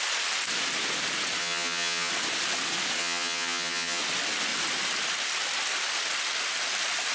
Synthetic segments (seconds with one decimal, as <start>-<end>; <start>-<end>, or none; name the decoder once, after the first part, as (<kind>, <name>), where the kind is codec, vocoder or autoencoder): 1.4-2.1 (vocoder, HiFi-GAN); 3.0-4.0